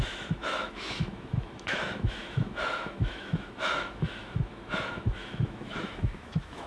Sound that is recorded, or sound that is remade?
remade